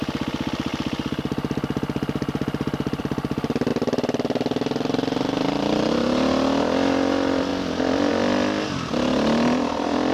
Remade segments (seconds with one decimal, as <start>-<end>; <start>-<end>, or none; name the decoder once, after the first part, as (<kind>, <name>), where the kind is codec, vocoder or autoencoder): 3.7-5.9 (vocoder, BigVGAN v2)